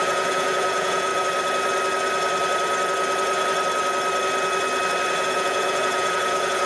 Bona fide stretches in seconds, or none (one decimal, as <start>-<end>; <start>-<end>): 1.1-5.1